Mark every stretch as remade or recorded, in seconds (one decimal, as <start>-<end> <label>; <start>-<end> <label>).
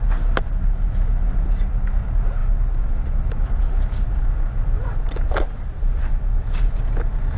0.0-2.4 recorded; 2.4-6.8 remade; 6.8-7.4 recorded